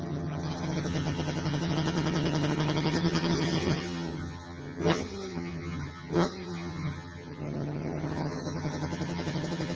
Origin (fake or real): fake